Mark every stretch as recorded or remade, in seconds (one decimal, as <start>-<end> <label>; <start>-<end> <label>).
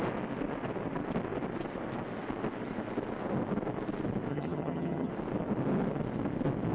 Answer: 0.0-4.3 recorded; 4.3-5.1 remade; 5.1-6.7 recorded